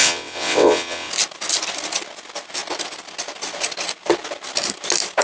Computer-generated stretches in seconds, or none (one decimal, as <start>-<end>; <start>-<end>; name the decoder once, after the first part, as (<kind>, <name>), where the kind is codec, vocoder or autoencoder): 0.0-1.1 (vocoder, WaveNeXt)